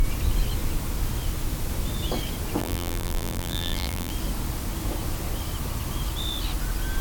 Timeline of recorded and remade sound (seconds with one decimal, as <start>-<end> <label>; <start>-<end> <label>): 0.0-2.6 recorded; 2.6-4.1 remade; 4.1-7.0 recorded